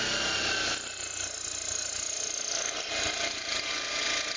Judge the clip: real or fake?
real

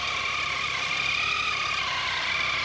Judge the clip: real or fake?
fake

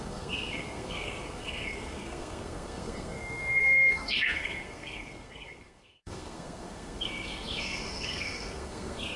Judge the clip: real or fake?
fake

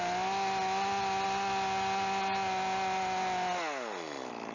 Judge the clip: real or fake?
real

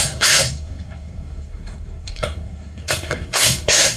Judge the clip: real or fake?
fake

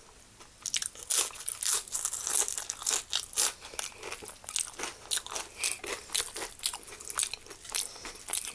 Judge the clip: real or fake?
real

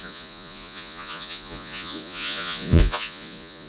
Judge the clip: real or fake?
fake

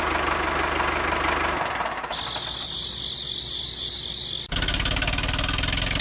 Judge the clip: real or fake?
real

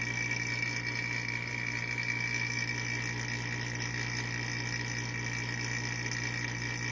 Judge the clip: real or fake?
real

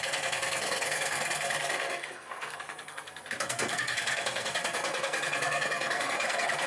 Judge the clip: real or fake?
fake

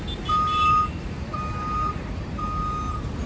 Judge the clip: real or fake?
real